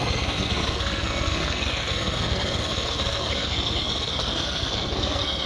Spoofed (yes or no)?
yes